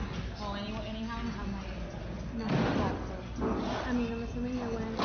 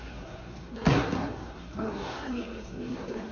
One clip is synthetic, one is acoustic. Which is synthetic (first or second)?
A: second